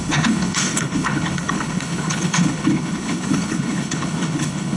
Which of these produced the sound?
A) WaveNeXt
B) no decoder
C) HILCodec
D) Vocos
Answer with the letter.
C